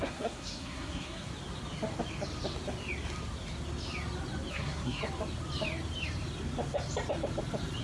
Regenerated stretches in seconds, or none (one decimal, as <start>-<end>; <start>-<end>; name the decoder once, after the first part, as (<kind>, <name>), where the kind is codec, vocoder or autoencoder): 0.0-1.3 (codec, SNAC); 4.5-5.0